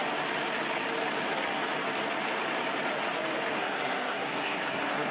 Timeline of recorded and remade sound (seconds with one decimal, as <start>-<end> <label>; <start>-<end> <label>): 0.0-3.6 recorded; 3.6-5.1 remade